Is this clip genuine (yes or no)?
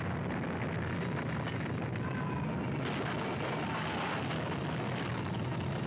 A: yes